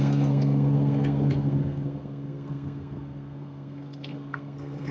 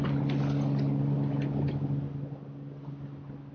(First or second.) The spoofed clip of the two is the first